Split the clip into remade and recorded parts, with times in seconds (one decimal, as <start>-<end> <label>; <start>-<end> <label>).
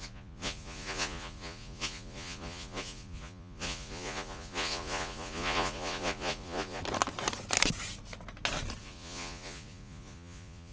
0.0-6.8 remade; 6.8-8.8 recorded; 8.8-10.7 remade